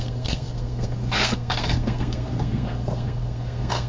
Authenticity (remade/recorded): remade